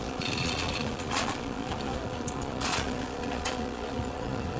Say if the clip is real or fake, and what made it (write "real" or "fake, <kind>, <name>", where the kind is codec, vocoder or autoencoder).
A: fake, vocoder, Vocos